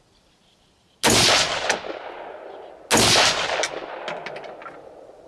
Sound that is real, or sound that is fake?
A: real